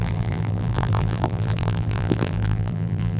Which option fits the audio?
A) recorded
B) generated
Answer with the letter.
B